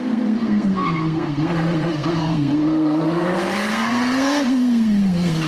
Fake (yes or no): yes